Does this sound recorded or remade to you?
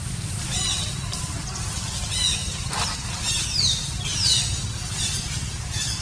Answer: recorded